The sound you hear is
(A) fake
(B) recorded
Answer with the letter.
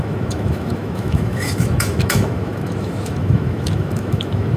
A